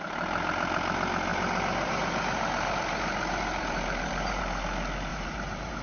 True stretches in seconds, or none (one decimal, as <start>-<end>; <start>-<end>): 0.0-1.3; 4.4-5.1